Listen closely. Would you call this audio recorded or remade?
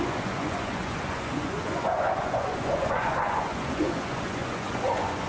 remade